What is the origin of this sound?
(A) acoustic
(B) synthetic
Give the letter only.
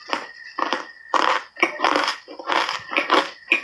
A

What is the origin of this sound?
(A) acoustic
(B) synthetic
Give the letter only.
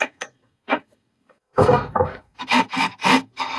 B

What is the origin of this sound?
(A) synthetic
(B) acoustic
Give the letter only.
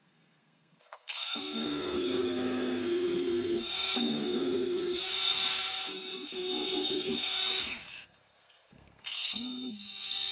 A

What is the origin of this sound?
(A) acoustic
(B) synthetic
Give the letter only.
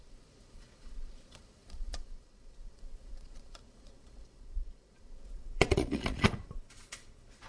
B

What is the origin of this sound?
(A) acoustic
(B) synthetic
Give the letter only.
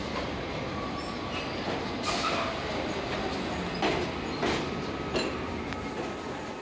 A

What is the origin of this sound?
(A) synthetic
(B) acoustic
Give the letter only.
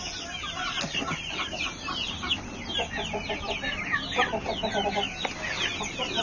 B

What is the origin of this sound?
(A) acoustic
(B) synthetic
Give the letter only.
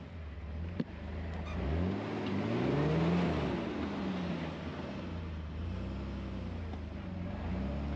A